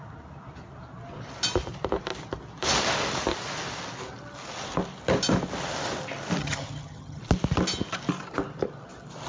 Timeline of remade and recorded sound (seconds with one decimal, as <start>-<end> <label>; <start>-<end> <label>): 0.0-6.4 recorded; 6.4-7.2 remade; 7.2-9.3 recorded